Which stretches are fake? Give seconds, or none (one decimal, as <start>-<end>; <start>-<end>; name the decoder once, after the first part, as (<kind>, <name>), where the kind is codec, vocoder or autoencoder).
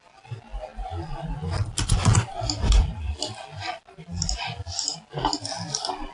none